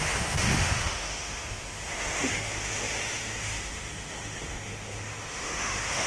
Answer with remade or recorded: remade